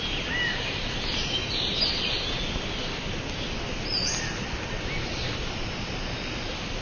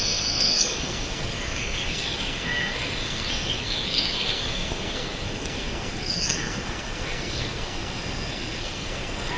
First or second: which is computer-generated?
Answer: second